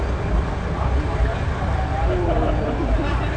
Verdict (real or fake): real